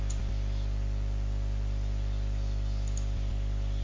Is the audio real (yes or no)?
yes